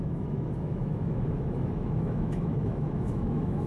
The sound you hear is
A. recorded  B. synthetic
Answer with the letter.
B